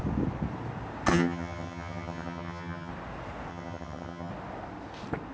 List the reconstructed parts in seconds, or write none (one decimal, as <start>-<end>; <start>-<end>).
1.1-2.9; 3.5-4.3